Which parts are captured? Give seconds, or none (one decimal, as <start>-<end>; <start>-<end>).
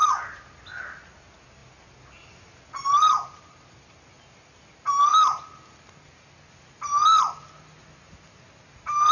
0.0-9.1